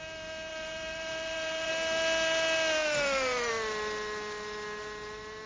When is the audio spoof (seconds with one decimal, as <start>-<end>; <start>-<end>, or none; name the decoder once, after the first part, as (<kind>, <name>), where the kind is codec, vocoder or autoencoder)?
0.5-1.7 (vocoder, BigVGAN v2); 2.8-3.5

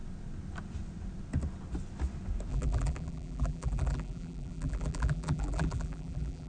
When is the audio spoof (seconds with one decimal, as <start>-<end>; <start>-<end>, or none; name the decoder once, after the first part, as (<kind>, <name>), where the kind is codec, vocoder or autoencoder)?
2.5-6.5 (vocoder, BigVGAN v2)

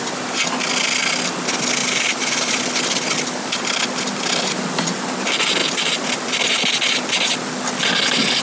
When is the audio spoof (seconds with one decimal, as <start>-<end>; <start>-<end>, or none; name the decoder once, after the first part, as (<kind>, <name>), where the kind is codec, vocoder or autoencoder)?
1.8-2.6 (vocoder, BigVGAN v2); 5.6-6.1